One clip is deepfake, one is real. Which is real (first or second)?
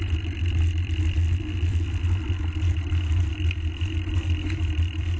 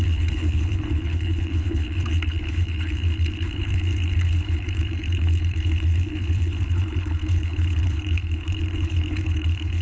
first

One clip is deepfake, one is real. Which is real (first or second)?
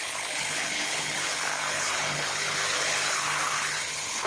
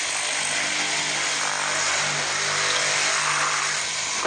second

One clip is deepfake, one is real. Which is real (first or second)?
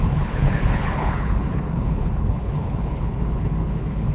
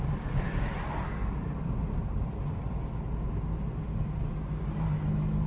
second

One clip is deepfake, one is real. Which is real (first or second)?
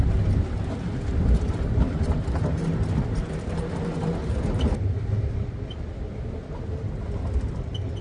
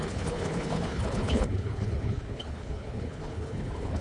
first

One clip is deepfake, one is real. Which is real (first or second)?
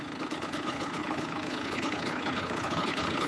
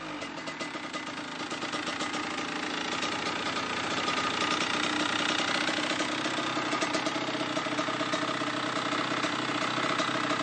second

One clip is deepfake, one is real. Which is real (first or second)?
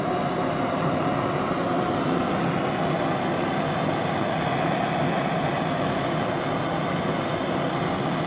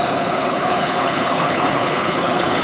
first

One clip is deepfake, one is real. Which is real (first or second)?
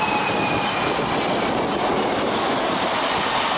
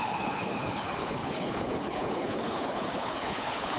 first